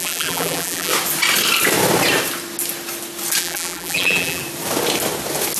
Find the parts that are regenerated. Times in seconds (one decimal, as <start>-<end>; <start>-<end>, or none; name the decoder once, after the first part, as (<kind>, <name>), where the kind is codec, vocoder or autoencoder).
0.0-0.9 (vocoder, BigVGAN v2); 3.4-4.4